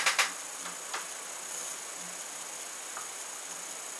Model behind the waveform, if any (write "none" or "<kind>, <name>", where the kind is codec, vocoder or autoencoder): none